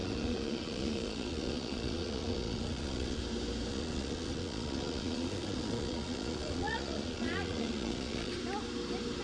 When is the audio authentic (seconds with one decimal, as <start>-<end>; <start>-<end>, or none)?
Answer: 3.2-3.7; 8.3-9.2